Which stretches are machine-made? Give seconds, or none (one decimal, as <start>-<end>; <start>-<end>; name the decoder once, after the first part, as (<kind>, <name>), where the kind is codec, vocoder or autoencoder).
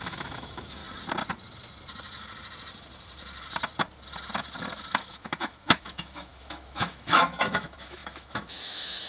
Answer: 0.0-0.8 (autoencoder, DAC-VAE); 5.0-9.1